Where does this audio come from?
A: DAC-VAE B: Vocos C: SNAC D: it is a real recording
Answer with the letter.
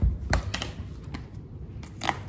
D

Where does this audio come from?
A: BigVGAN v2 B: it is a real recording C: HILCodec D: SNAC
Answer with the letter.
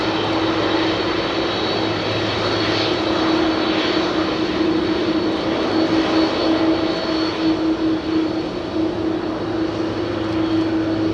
B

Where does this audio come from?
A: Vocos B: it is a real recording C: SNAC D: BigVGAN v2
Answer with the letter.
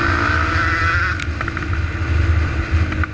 B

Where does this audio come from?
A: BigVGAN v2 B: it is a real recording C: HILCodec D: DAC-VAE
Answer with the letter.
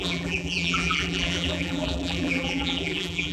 A